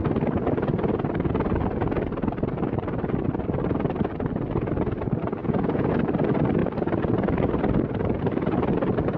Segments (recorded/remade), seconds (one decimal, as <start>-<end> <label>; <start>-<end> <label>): 0.0-5.4 recorded; 5.4-6.0 remade; 6.0-9.2 recorded